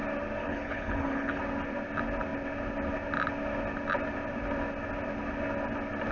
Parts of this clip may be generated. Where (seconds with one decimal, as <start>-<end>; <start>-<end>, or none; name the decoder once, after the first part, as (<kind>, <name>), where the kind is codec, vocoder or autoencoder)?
0.4-1.4 (codec, HILCodec)